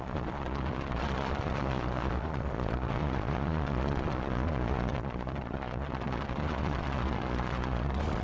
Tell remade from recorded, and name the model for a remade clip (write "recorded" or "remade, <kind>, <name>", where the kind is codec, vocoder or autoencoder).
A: remade, vocoder, Vocos